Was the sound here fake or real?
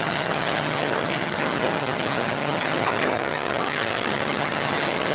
fake